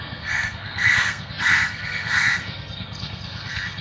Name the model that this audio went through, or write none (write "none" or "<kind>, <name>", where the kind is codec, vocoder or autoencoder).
codec, SNAC